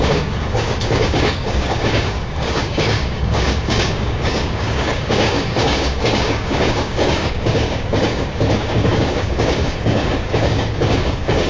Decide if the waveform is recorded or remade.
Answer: remade